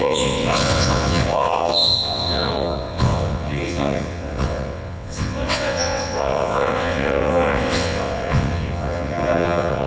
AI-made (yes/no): yes